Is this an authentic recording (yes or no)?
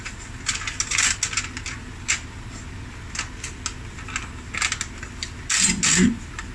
yes